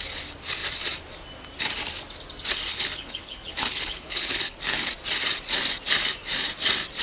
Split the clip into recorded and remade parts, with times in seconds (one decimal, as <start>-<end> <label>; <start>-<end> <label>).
0.0-2.7 recorded; 2.7-4.9 remade; 4.9-7.0 recorded